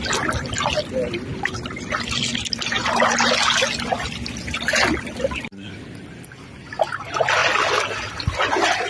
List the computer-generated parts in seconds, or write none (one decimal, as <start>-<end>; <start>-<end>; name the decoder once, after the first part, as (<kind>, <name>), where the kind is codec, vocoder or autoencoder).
none